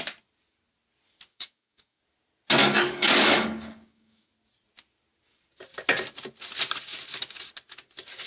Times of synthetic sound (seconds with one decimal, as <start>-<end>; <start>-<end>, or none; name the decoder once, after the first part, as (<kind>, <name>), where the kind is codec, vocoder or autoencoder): 1.3-2.0 (codec, DAC); 2.6-4.3